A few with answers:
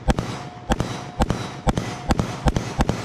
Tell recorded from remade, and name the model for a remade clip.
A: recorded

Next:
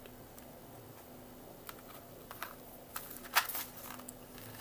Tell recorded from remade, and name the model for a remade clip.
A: recorded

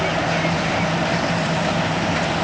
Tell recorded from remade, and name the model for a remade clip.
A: recorded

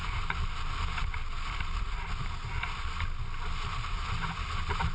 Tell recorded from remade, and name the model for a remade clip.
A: recorded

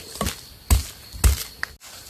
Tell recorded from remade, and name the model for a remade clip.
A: recorded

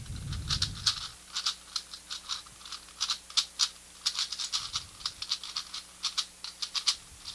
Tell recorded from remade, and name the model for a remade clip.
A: recorded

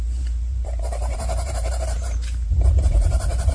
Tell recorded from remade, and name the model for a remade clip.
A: remade, vocoder, BigVGAN v2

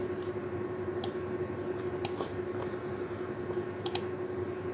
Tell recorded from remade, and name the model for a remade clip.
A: recorded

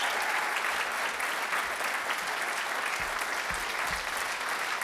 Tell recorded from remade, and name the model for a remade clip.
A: recorded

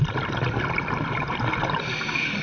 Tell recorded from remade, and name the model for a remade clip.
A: recorded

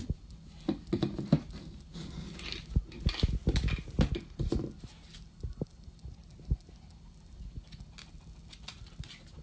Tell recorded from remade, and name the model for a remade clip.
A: recorded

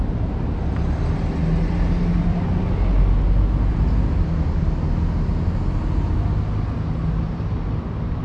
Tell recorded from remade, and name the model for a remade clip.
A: recorded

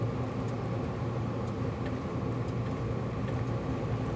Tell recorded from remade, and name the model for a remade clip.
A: recorded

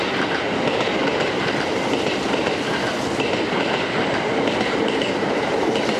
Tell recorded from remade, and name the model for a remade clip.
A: remade, vocoder, BigVGAN v2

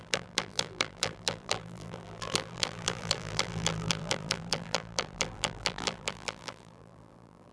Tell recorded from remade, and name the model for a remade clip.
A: remade, vocoder, BigVGAN v2